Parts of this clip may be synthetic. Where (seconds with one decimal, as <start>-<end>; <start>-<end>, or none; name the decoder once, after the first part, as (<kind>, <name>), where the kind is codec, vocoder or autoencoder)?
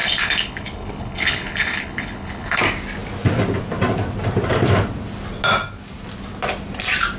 0.0-2.6 (codec, HILCodec)